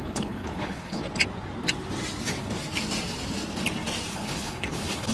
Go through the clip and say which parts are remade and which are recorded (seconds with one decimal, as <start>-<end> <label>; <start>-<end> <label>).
0.0-1.0 remade; 1.0-4.1 recorded; 4.1-5.1 remade